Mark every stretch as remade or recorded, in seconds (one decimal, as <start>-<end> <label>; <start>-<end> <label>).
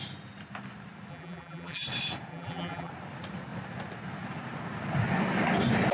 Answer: 0.0-1.1 recorded; 1.1-1.8 remade; 1.8-2.3 recorded; 2.3-2.9 remade; 2.9-5.9 recorded